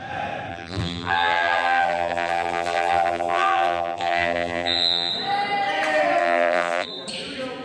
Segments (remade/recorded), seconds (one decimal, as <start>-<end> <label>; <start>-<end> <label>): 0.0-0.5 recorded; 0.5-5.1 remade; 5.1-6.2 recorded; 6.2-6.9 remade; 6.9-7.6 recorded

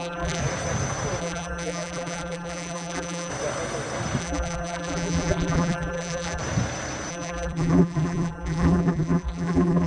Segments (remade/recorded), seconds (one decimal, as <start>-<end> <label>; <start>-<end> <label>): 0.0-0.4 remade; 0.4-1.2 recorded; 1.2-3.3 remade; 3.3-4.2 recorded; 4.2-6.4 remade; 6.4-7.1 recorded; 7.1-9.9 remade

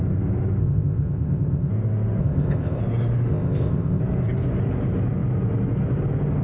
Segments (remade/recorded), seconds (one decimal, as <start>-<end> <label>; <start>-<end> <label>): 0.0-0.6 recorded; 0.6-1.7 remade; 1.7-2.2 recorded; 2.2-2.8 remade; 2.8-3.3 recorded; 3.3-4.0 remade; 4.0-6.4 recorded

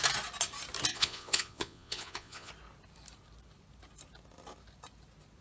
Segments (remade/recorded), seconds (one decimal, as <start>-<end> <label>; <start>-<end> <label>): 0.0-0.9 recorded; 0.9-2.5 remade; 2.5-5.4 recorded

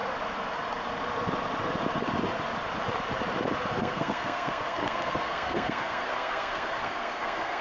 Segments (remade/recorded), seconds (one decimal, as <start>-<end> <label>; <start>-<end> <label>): 0.0-3.8 recorded; 3.8-7.6 remade

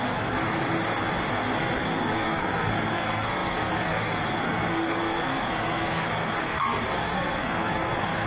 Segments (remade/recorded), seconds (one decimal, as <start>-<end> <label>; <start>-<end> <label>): 0.0-0.4 remade; 0.4-1.3 recorded; 1.3-8.3 remade

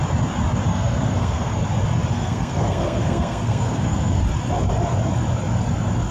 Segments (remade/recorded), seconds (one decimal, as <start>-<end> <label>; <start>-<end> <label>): 0.0-0.7 recorded; 0.7-1.6 remade; 1.6-2.1 recorded; 2.1-4.1 remade; 4.1-6.1 recorded